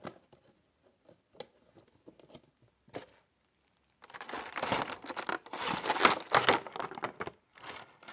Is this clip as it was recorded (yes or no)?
yes